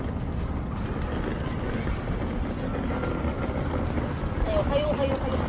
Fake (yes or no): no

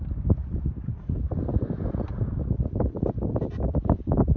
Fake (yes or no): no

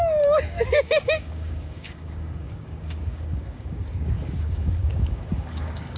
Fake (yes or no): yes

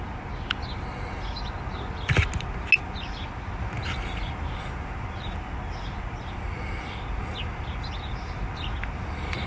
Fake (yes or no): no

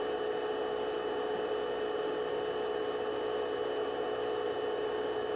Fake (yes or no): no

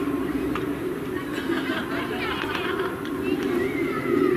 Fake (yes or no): no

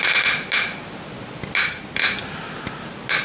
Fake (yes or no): no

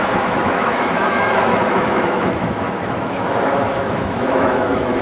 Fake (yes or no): yes